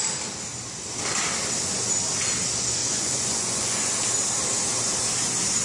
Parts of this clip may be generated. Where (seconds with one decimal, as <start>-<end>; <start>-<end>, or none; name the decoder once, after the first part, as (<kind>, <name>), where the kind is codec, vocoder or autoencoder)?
2.8-3.9 (vocoder, Vocos)